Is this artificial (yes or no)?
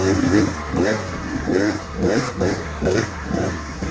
yes